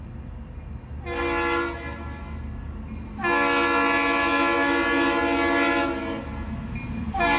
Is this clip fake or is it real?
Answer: real